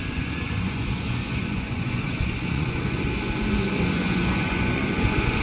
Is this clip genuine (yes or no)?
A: no